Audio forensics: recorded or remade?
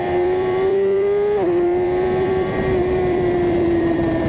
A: remade